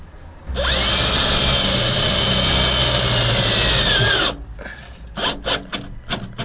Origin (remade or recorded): recorded